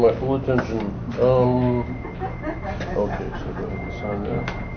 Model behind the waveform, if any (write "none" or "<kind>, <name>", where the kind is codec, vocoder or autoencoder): none